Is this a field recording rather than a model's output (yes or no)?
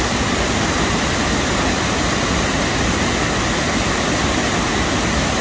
yes